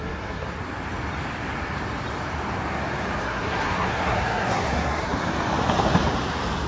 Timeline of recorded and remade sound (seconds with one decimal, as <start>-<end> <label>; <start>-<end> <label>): 0.0-0.6 remade; 0.6-3.2 recorded; 3.2-5.2 remade; 5.2-6.7 recorded